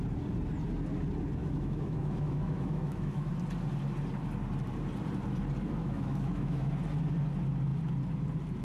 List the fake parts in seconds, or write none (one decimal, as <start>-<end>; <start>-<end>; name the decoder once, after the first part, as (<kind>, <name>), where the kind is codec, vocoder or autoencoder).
1.4-3.3 (autoencoder, DAC-VAE); 5.8-6.7